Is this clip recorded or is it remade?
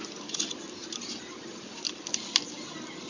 recorded